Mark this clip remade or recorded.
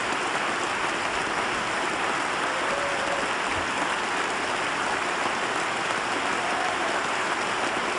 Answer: recorded